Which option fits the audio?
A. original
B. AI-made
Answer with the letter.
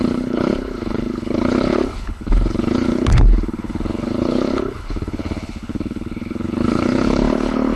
B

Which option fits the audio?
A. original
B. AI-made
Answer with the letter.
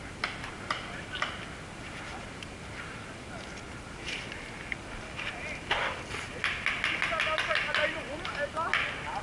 A